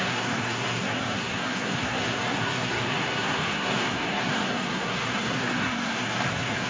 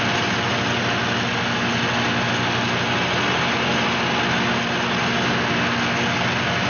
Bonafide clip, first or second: second